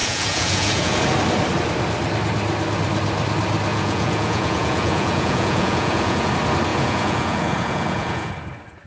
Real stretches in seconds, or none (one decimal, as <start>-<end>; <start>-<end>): 1.0-3.7; 6.3-6.7; 8.3-8.9